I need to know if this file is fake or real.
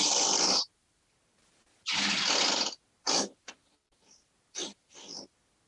real